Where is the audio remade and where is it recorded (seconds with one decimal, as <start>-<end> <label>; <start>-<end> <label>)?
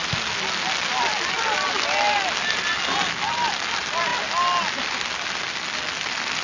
0.0-6.4 recorded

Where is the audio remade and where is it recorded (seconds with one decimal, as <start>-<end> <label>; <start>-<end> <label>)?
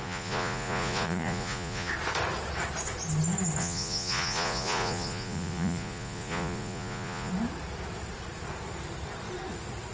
0.0-1.9 remade; 1.9-3.6 recorded; 3.6-7.3 remade; 7.3-9.9 recorded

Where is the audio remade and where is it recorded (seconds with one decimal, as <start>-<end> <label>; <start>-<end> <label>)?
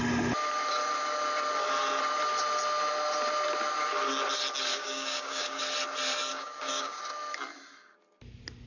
0.0-4.7 recorded; 4.7-5.6 remade; 5.6-6.3 recorded; 6.3-7.0 remade; 7.0-8.7 recorded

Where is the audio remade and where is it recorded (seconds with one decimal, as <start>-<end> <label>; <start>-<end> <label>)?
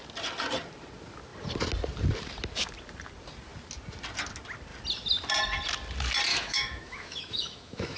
0.0-6.3 recorded; 6.3-8.0 remade